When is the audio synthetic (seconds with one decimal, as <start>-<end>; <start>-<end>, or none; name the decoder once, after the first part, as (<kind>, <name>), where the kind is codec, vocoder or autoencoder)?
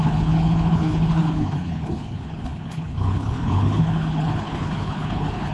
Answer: 0.0-5.5 (codec, HILCodec)